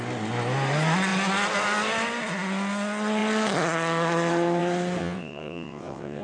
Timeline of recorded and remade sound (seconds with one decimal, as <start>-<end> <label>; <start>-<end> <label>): 0.0-5.0 recorded; 5.0-6.2 remade